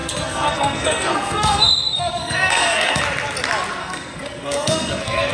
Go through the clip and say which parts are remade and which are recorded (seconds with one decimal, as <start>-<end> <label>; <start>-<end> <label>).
0.0-3.0 remade; 3.0-3.8 recorded; 3.8-5.3 remade